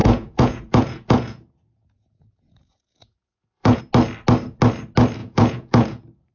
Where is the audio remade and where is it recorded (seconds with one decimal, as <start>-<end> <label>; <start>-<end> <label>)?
0.0-3.8 remade; 3.8-5.2 recorded; 5.2-6.3 remade

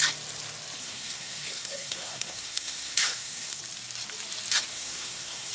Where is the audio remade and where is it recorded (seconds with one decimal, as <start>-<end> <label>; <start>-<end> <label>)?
0.0-0.8 recorded; 0.8-3.6 remade; 3.6-4.7 recorded; 4.7-5.5 remade

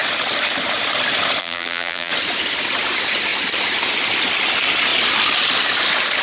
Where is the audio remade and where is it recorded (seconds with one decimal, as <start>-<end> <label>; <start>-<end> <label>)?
0.0-1.4 recorded; 1.4-2.1 remade; 2.1-6.2 recorded

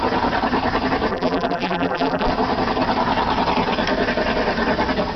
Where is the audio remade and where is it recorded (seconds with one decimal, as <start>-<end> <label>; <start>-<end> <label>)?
0.0-1.1 recorded; 1.1-2.3 remade; 2.3-5.2 recorded

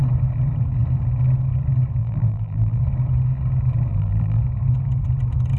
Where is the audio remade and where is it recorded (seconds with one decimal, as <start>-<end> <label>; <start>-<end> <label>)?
0.0-2.0 recorded; 2.0-2.8 remade; 2.8-3.9 recorded; 3.9-4.4 remade; 4.4-5.6 recorded

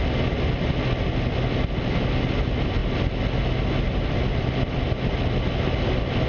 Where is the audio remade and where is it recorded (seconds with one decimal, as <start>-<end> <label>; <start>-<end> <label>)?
0.0-6.3 recorded

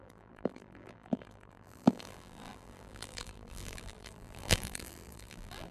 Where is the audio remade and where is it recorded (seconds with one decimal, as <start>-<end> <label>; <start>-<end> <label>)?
0.0-5.7 remade